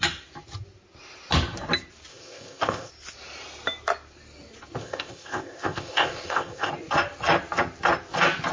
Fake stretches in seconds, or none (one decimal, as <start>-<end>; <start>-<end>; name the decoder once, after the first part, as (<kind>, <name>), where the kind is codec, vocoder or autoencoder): 2.1-2.9 (codec, ZipCodec); 4.8-6.7